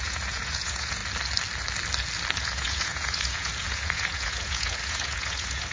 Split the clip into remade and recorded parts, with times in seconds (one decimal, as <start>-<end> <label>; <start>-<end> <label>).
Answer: 0.0-1.0 remade; 1.0-2.4 recorded; 2.4-5.7 remade